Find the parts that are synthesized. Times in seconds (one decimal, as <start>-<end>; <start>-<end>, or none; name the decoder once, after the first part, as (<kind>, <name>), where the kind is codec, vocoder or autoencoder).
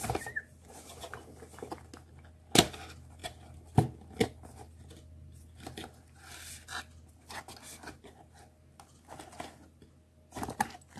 none